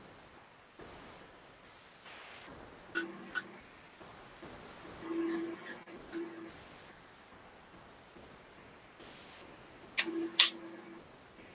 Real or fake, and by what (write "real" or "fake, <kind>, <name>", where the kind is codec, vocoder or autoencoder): real